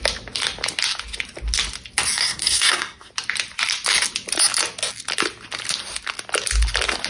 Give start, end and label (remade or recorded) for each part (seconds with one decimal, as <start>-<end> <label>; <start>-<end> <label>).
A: 0.0-2.2 recorded; 2.2-3.1 remade; 3.1-7.1 recorded